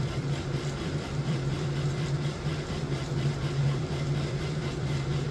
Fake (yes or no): yes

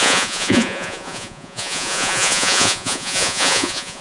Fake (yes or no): yes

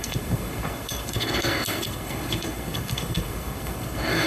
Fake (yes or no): yes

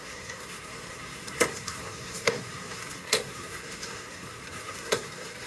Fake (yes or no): yes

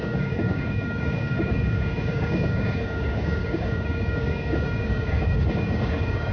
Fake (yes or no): yes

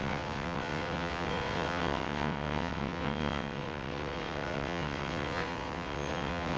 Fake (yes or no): yes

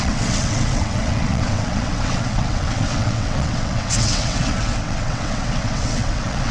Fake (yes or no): yes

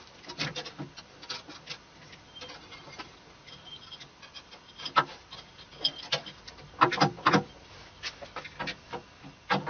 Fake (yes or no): no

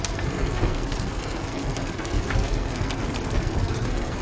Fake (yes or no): yes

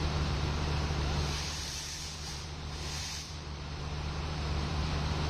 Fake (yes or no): yes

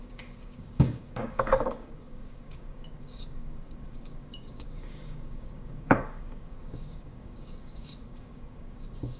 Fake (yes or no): yes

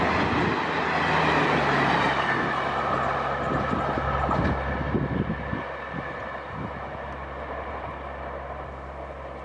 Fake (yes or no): no